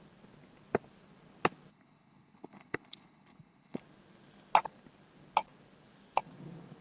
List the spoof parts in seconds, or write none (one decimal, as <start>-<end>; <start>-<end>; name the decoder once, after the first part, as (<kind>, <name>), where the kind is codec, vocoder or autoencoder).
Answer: 1.7-3.8 (codec, HILCodec)